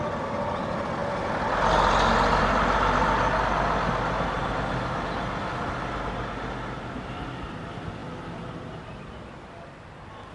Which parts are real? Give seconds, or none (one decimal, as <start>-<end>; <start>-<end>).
0.0-10.3

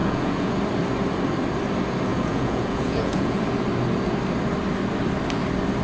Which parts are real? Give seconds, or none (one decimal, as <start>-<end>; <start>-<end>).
0.6-2.1; 3.4-5.8

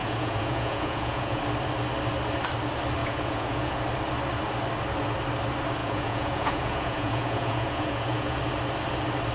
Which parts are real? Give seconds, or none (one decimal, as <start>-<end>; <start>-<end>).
1.4-3.0; 3.8-5.8; 8.4-9.3

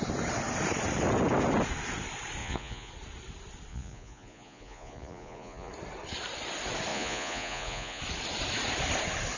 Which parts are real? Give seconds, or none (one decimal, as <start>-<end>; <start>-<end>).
0.0-2.4; 2.9-3.7; 5.7-6.9; 8.0-9.4

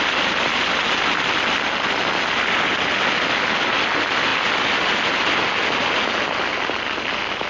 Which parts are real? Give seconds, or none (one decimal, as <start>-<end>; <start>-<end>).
0.0-7.5

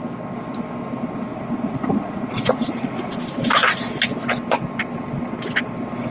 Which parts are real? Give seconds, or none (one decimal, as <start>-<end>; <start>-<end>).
0.0-1.3; 3.2-6.1

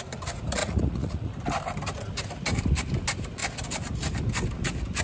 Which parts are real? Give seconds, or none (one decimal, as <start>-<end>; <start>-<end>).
0.0-0.6; 1.3-5.0